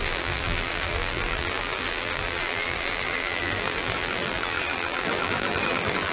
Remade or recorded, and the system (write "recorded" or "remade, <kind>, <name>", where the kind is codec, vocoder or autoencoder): remade, vocoder, BigVGAN v2